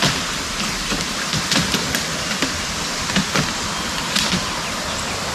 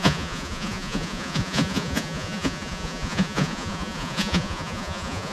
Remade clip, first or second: second